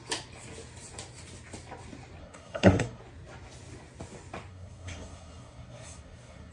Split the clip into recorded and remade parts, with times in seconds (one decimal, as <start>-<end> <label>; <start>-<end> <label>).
0.0-2.2 recorded; 2.2-3.0 remade; 3.0-4.5 recorded; 4.5-6.5 remade